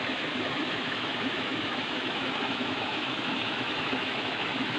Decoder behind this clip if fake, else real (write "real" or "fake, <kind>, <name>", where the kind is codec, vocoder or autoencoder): fake, autoencoder, DAC-VAE